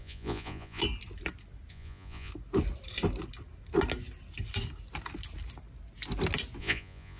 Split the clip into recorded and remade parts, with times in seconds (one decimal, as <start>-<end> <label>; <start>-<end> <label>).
0.0-0.8 remade; 0.8-1.7 recorded; 1.7-2.3 remade; 2.3-6.6 recorded; 6.6-7.2 remade